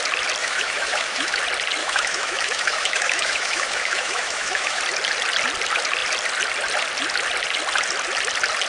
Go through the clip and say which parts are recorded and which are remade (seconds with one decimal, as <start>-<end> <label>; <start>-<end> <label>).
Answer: 0.0-0.4 recorded; 0.4-1.4 remade; 1.4-1.8 recorded; 1.8-4.8 remade; 4.8-8.7 recorded